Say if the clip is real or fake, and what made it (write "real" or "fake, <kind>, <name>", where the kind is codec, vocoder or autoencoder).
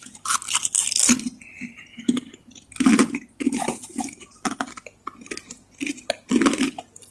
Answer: real